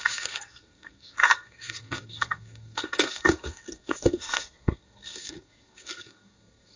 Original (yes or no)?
no